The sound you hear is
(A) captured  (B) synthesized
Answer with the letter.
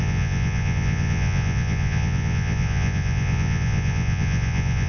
B